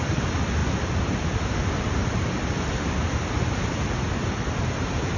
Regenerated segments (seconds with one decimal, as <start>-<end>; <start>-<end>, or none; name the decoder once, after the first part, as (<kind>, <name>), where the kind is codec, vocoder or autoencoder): none